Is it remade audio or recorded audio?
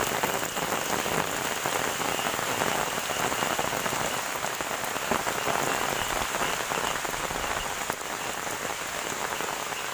recorded